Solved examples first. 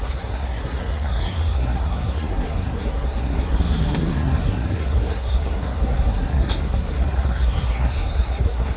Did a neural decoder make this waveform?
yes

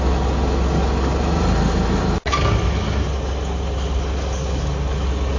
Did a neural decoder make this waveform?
no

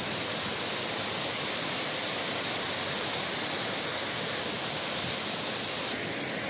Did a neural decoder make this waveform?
no